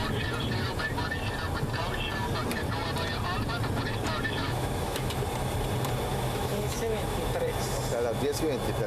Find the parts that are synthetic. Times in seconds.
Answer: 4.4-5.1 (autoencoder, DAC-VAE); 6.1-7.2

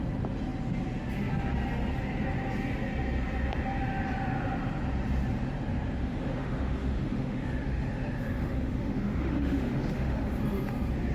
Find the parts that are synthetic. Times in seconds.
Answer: 6.0-10.4 (autoencoder, DAC-VAE)

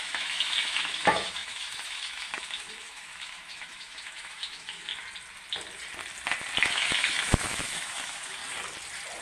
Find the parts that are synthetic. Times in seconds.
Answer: 0.0-4.9 (autoencoder, DAC-VAE); 6.7-8.4

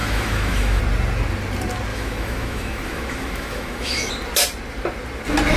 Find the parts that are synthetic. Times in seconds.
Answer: 0.0-0.8 (autoencoder, DAC-VAE); 1.9-4.1

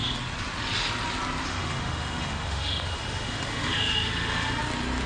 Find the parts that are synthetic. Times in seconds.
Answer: 1.5-4.6 (autoencoder, DAC-VAE)

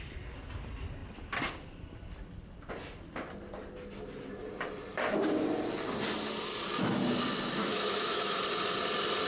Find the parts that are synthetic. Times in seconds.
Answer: 7.6-8.4 (autoencoder, DAC-VAE)

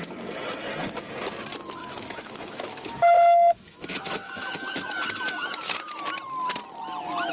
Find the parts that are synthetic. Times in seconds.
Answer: 1.8-6.0 (autoencoder, DAC-VAE)